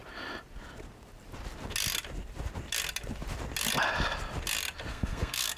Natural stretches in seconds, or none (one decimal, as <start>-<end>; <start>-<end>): 0.0-4.9